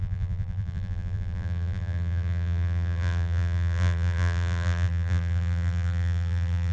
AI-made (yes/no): yes